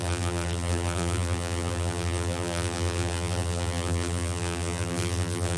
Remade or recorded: remade